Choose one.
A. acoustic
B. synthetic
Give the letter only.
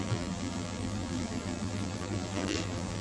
B